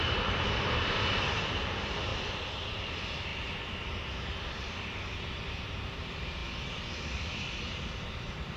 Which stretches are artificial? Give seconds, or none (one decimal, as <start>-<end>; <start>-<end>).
0.0-2.1; 2.9-6.4; 7.4-8.6